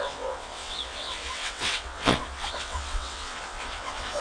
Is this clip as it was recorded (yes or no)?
no